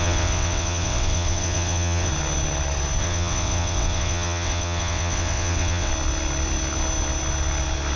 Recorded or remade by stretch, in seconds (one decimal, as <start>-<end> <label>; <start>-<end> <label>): 0.0-2.1 remade; 2.1-3.0 recorded; 3.0-5.9 remade; 5.9-8.0 recorded